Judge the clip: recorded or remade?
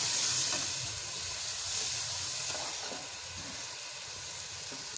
recorded